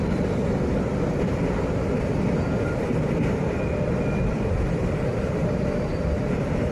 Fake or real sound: real